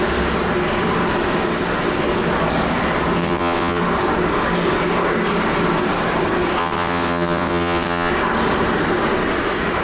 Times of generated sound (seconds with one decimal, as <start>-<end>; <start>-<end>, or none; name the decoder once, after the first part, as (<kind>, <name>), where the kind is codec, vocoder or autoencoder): 3.2-3.8 (vocoder, WaveNeXt); 6.6-8.1